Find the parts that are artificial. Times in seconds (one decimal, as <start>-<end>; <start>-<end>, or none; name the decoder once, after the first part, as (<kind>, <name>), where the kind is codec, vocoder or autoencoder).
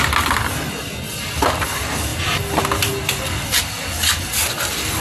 none